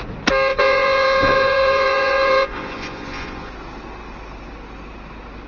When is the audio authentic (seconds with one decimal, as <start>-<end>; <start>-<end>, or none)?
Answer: 0.0-0.5; 3.5-5.5